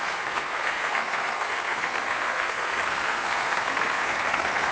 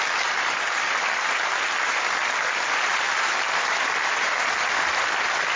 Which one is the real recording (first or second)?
second